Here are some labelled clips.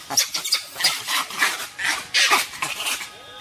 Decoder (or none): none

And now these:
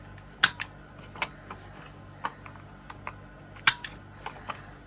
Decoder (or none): none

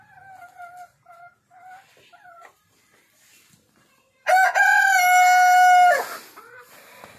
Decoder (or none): none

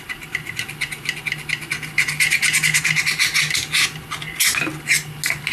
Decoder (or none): none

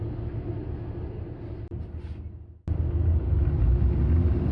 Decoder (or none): none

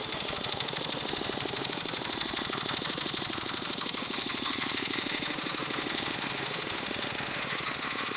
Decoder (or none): autoencoder, DAC-VAE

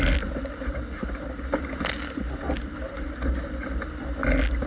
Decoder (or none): none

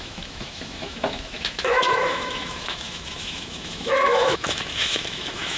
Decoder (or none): autoencoder, DAC-VAE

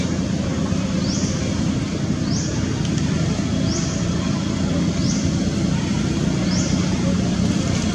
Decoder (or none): none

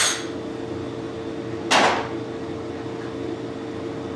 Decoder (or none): none